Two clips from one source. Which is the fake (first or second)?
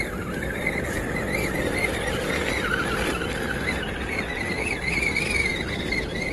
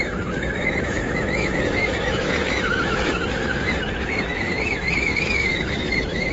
second